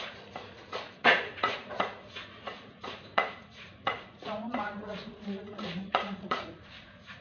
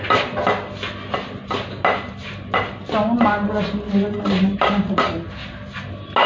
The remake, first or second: first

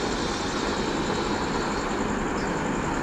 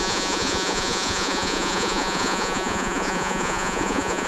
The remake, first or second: second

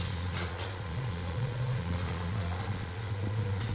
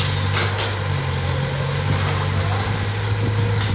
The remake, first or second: first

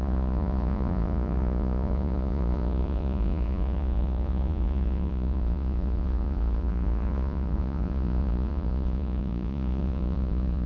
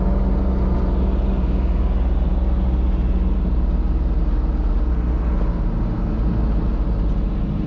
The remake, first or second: first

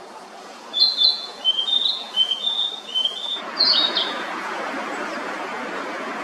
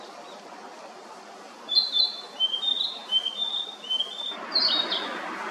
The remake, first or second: first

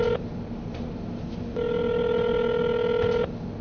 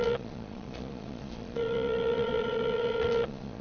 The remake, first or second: second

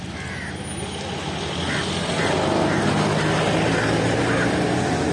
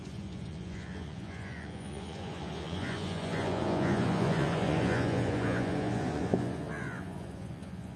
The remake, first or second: second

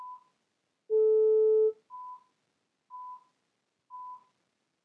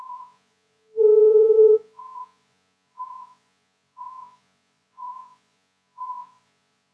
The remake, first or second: second